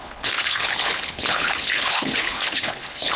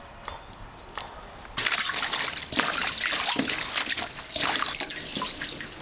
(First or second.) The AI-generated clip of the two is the first